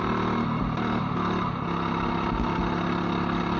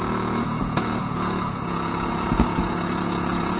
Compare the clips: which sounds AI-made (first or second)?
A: second